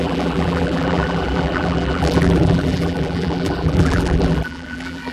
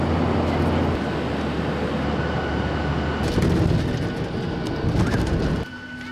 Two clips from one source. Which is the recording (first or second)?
second